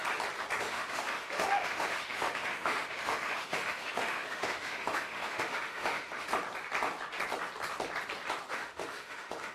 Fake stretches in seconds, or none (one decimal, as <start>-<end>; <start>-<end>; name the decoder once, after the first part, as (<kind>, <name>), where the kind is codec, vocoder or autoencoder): 0.6-6.3 (autoencoder, DAC-VAE); 8.5-9.5